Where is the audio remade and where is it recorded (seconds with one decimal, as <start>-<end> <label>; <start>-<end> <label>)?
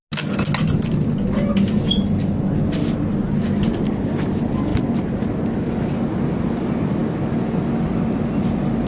0.0-8.9 recorded